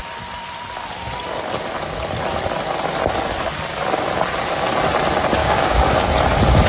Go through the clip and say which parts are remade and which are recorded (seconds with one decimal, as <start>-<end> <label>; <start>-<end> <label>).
0.0-5.4 recorded; 5.4-6.0 remade; 6.0-6.7 recorded